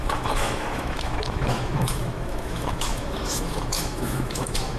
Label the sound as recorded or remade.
remade